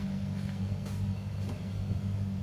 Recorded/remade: remade